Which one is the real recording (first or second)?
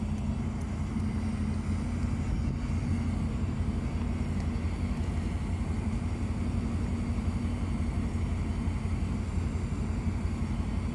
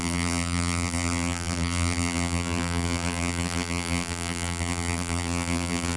first